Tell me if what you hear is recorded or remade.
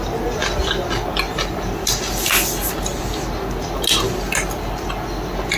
recorded